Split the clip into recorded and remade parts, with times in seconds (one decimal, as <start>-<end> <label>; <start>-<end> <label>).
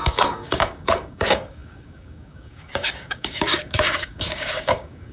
0.0-5.1 remade